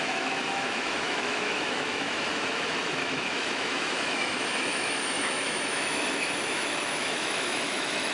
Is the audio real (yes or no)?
no